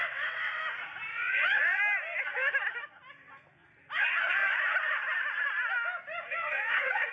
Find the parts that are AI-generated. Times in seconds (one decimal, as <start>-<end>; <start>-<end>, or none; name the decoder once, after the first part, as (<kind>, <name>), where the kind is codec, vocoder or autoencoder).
0.0-0.6 (vocoder, WaveNeXt); 1.1-1.8; 6.4-7.1